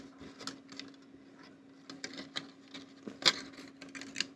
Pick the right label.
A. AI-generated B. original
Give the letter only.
B